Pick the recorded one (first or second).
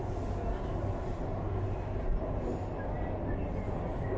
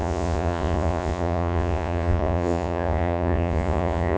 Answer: first